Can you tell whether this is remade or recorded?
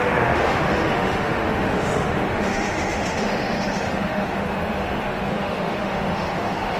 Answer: remade